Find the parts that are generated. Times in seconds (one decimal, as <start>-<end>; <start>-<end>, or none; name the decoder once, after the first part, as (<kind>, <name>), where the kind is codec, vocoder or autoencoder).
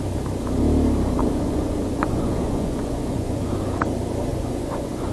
1.2-3.8 (vocoder, Vocos); 4.3-5.1